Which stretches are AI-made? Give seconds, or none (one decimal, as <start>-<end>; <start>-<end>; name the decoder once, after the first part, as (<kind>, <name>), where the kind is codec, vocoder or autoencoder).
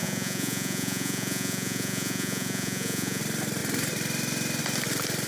0.0-3.2 (vocoder, Vocos)